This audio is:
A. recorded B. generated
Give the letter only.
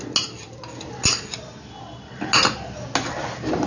A